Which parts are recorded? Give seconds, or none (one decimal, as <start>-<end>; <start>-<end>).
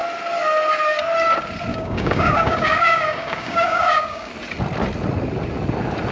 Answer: 0.0-1.7; 4.3-6.1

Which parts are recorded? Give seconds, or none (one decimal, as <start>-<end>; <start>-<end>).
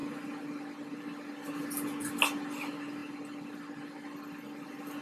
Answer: 0.0-5.0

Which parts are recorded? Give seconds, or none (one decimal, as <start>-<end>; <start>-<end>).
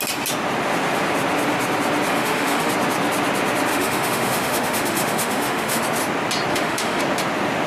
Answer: 0.0-2.1; 2.7-3.7; 5.8-6.5; 7.0-7.7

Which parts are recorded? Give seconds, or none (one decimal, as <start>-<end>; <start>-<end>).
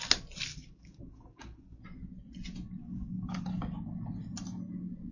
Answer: 0.0-0.5; 1.8-2.8; 3.5-5.1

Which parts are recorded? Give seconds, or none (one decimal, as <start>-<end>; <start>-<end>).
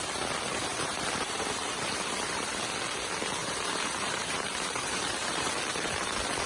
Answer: 0.0-0.7; 2.6-3.4; 5.5-6.5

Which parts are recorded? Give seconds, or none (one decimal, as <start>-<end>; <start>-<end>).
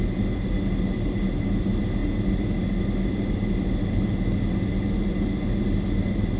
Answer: 0.0-6.4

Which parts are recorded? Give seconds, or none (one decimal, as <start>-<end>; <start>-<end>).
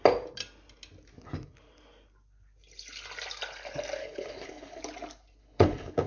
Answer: 0.0-4.0; 4.8-5.4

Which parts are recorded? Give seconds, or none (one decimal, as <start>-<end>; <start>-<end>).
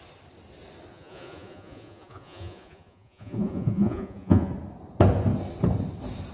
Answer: 0.0-0.9; 4.5-6.3